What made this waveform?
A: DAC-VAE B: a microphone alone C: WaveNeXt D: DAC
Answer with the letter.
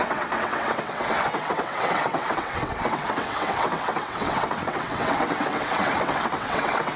C